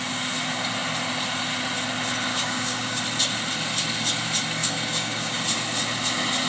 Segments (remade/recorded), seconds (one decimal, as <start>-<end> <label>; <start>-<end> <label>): 0.0-2.3 recorded; 2.3-3.0 remade; 3.0-4.6 recorded; 4.6-5.4 remade; 5.4-6.5 recorded